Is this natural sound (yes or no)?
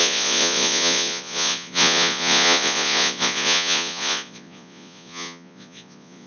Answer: no